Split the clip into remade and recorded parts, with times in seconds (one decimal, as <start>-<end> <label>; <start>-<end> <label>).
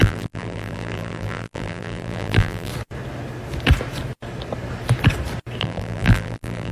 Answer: 0.0-2.7 remade; 2.7-5.6 recorded; 5.6-6.7 remade